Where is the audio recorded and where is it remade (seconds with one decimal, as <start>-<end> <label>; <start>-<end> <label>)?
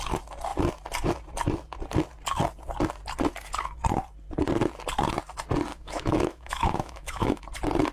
0.0-5.7 recorded; 5.7-7.4 remade; 7.4-7.9 recorded